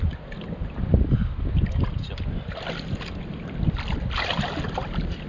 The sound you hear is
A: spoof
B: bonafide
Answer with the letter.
B